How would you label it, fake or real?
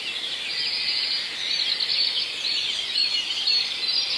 real